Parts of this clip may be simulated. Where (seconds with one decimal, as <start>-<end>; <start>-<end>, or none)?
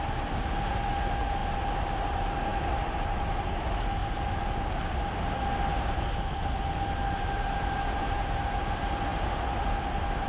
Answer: none